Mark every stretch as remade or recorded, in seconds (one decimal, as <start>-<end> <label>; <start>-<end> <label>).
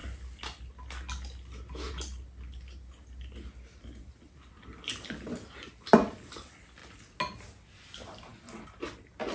0.0-9.3 recorded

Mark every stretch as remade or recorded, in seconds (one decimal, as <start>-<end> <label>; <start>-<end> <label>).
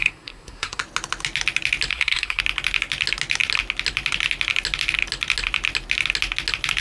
0.0-0.8 remade; 0.8-1.9 recorded; 1.9-2.4 remade; 2.4-6.8 recorded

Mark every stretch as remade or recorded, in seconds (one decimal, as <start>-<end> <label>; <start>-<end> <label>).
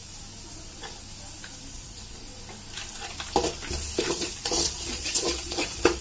0.0-1.7 recorded; 1.7-2.3 remade; 2.3-4.1 recorded; 4.1-6.0 remade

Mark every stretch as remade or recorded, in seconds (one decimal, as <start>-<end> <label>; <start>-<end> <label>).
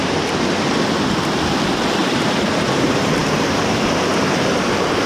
0.0-2.0 recorded; 2.0-5.1 remade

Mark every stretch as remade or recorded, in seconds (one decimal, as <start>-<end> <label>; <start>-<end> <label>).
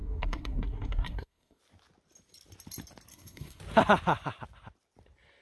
0.0-1.6 remade; 1.6-3.1 recorded; 3.1-3.6 remade; 3.6-5.4 recorded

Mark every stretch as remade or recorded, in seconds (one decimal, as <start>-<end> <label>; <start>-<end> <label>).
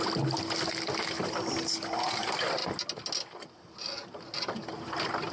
0.0-2.6 remade; 2.6-5.3 recorded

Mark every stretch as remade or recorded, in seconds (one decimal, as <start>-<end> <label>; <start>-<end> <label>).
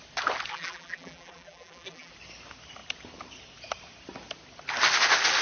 0.0-0.5 recorded; 0.5-2.1 remade; 2.1-5.4 recorded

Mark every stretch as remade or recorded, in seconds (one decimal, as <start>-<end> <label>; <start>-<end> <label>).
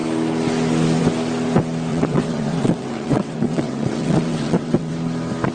0.0-1.9 recorded; 1.9-4.9 remade; 4.9-5.5 recorded